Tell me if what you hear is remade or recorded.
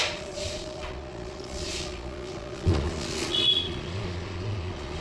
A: remade